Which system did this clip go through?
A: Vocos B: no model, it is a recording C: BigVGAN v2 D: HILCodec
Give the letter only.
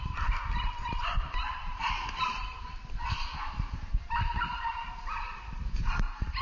C